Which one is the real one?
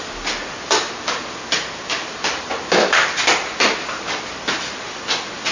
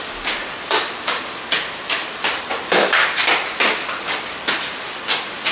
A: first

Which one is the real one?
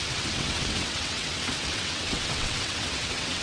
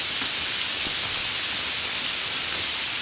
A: second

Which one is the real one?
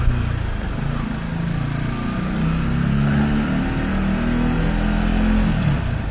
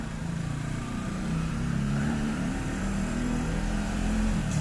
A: first